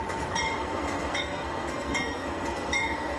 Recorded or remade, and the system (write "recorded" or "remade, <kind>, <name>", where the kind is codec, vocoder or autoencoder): remade, codec, SNAC